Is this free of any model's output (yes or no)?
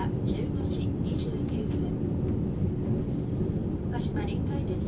no